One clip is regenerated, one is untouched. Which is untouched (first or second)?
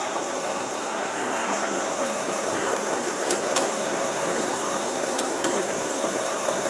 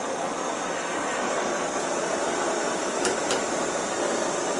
second